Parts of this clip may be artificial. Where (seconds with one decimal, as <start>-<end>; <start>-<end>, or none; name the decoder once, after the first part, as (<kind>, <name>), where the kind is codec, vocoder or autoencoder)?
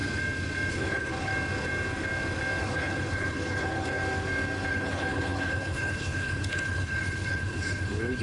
0.7-1.3 (codec, HILCodec); 2.6-4.0; 4.7-8.2